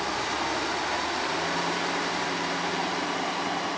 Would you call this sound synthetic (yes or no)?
yes